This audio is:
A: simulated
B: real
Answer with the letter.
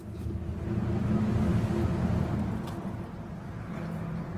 B